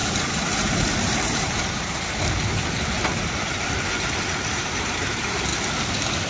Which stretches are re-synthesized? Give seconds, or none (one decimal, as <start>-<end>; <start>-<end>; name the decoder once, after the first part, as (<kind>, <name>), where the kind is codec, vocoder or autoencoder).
0.0-5.5 (vocoder, BigVGAN v2)